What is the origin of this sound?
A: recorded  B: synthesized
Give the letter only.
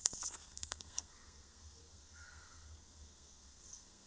B